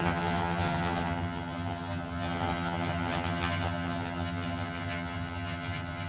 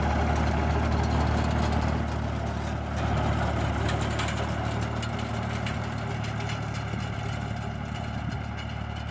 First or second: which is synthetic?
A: first